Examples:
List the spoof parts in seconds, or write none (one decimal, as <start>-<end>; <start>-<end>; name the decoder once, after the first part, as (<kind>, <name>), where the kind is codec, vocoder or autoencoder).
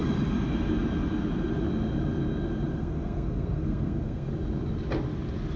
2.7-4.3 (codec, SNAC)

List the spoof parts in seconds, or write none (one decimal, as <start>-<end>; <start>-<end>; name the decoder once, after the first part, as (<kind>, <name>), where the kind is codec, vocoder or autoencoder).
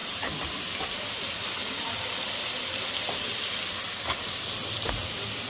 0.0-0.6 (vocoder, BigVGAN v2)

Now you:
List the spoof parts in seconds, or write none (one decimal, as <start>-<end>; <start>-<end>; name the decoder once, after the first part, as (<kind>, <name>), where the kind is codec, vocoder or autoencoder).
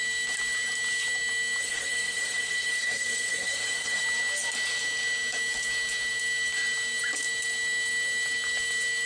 1.6-4.0 (codec, SNAC)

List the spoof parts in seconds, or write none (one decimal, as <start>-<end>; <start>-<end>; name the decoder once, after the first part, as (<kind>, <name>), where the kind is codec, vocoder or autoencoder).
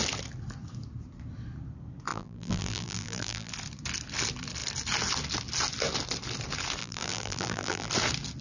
2.1-3.5 (vocoder, BigVGAN v2); 6.8-7.9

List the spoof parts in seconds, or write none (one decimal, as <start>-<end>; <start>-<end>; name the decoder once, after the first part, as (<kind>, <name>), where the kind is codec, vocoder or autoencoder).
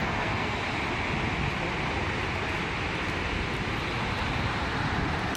0.0-0.6 (codec, SNAC)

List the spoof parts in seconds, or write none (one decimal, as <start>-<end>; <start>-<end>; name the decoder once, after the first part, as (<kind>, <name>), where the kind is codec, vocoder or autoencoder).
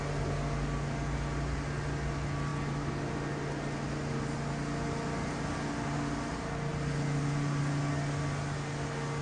none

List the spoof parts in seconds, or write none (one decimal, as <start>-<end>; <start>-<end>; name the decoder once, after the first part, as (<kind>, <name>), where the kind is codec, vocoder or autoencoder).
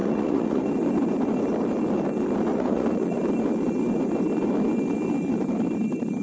0.0-0.6 (vocoder, Vocos); 2.5-3.2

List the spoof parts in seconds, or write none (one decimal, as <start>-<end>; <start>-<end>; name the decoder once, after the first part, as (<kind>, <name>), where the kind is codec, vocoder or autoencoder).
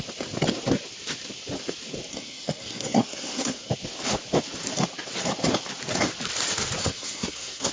2.1-3.7 (codec, SNAC); 6.8-7.7